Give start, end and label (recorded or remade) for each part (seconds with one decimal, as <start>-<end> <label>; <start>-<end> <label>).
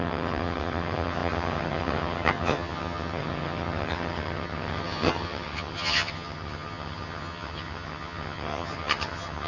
0.0-9.5 remade